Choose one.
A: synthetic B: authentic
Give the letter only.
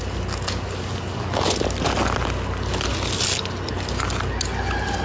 B